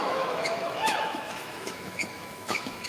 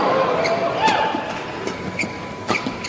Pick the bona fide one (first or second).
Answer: second